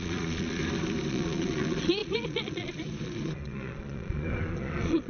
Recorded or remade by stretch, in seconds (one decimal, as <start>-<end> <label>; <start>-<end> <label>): 0.0-0.6 remade; 0.6-1.1 recorded; 1.1-5.1 remade

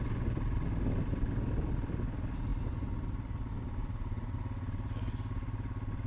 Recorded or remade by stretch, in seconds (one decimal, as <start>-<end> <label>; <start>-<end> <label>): 0.0-6.1 recorded